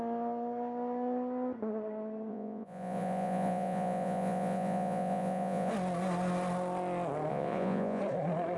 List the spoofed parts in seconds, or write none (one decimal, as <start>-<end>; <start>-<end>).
2.3-5.7; 7.3-8.0